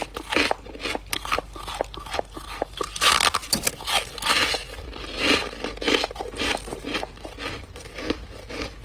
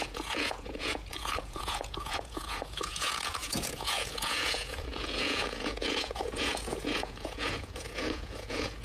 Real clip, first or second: first